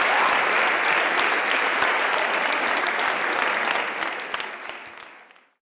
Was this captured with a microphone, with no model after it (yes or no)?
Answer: yes